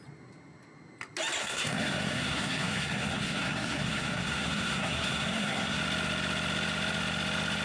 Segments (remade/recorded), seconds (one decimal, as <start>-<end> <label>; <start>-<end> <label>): 0.0-1.4 recorded; 1.4-5.8 remade; 5.8-7.6 recorded